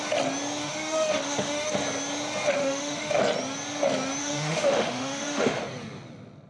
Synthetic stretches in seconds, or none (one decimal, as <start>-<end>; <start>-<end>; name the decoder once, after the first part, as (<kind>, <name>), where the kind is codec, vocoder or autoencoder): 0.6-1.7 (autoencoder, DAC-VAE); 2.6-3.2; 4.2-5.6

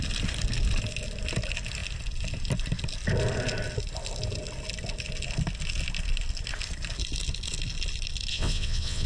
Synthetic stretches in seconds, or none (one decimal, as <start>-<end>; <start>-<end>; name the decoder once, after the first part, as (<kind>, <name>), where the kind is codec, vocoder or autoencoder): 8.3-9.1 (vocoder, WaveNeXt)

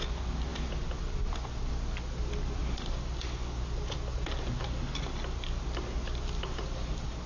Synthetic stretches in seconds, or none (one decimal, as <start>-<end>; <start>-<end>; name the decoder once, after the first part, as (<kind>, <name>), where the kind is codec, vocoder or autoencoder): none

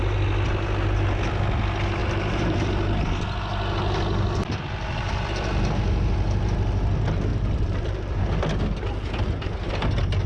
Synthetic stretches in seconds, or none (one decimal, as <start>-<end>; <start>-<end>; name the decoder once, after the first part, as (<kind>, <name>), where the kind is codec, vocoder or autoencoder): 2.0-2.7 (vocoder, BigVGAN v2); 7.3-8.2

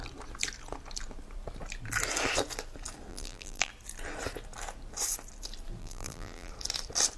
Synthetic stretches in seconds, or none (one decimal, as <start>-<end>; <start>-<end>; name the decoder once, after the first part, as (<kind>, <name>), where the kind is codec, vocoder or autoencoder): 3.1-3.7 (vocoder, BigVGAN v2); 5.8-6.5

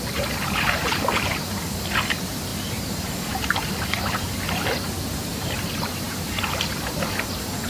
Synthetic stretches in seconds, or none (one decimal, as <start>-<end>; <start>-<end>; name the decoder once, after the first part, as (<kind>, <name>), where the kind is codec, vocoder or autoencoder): 2.5-4.0 (vocoder, BigVGAN v2); 5.3-6.3

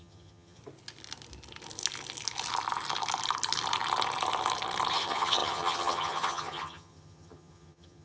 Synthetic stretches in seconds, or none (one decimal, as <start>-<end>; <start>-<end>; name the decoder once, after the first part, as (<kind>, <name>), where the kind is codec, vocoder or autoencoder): 0.0-0.6 (vocoder, HiFi-GAN); 4.9-8.0

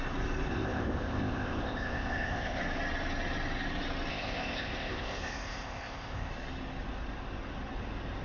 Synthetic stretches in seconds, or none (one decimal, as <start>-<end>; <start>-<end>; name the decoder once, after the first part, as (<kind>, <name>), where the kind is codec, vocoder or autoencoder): 0.5-2.6 (codec, ZipCodec); 4.1-6.3